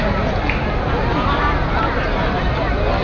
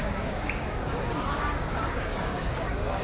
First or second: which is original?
first